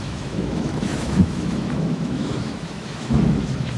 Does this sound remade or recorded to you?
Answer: remade